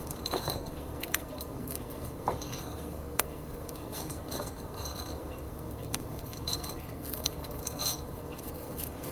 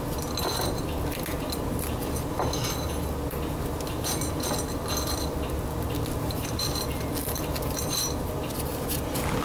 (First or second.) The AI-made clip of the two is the first